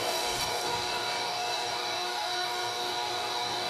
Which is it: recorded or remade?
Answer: remade